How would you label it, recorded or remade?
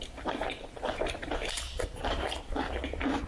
remade